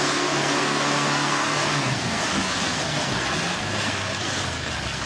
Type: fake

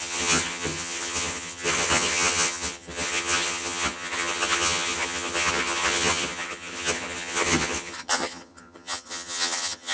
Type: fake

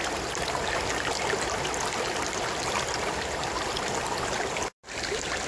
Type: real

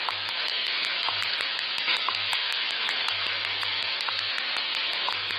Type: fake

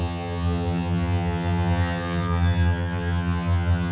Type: fake